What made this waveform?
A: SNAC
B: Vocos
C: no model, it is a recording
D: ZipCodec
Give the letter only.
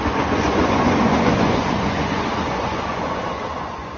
B